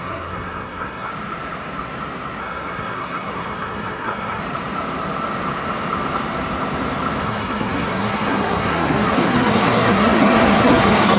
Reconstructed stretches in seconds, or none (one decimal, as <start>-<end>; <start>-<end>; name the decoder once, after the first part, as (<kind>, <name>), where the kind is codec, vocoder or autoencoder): 0.0-1.1 (codec, SNAC); 2.4-4.4; 7.2-11.2